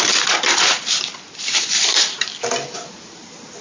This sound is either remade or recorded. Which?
recorded